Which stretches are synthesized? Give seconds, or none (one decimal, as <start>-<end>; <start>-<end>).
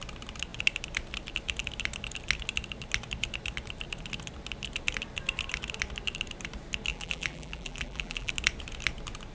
6.9-8.3